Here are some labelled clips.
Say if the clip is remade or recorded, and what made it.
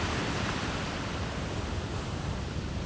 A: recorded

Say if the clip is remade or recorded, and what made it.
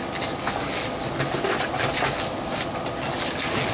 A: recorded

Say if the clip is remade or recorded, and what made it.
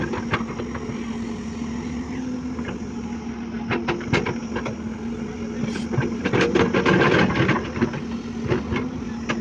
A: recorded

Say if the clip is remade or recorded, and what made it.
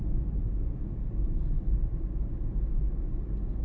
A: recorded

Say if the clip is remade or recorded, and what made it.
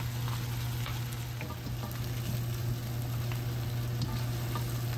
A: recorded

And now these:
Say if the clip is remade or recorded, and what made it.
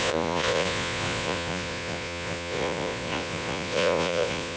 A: remade, vocoder, Vocos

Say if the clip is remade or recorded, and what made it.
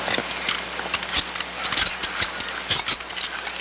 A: recorded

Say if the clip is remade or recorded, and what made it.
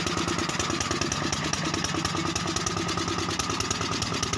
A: recorded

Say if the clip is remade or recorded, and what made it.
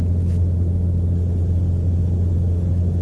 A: recorded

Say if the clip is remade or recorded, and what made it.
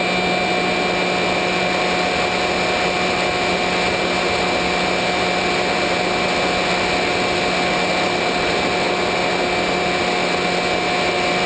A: recorded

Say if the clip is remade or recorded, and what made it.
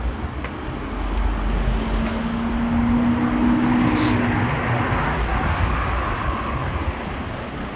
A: recorded